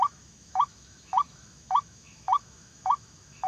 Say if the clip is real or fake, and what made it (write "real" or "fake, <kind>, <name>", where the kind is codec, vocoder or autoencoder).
fake, autoencoder, DAC-VAE